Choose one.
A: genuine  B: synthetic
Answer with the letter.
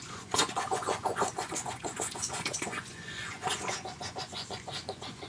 B